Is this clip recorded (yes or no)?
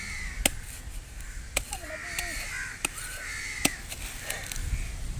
yes